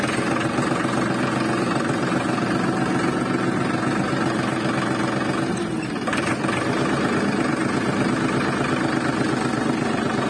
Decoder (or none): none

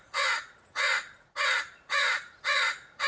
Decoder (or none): vocoder, Vocos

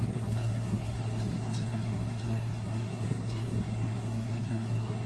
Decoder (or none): codec, SNAC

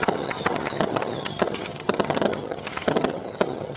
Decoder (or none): vocoder, HiFi-GAN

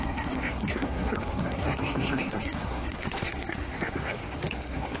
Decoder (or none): codec, SNAC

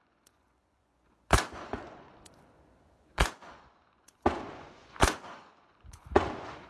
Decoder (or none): vocoder, Vocos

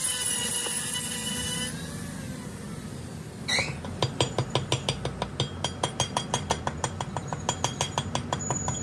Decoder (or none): none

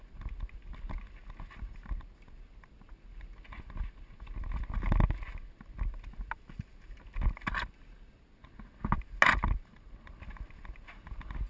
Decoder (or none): none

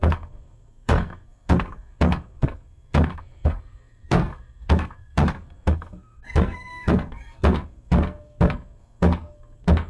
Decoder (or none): codec, SNAC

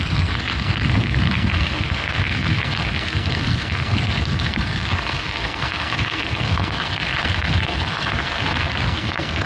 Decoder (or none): codec, SNAC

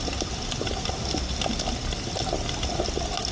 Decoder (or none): none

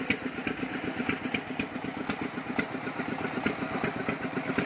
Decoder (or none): none